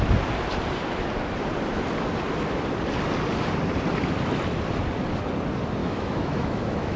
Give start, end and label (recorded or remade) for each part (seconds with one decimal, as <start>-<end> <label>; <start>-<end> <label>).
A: 0.0-5.8 recorded; 5.8-7.0 remade